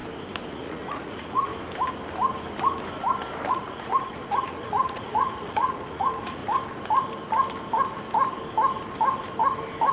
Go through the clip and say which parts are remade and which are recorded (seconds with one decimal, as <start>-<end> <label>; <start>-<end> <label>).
0.0-0.5 recorded; 0.5-1.5 remade; 1.5-3.5 recorded; 3.5-6.4 remade; 6.4-9.9 recorded